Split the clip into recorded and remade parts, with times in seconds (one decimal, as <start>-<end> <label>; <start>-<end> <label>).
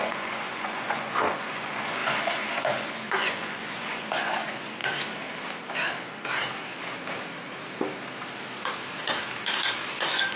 0.0-4.8 remade; 4.8-9.7 recorded; 9.7-10.4 remade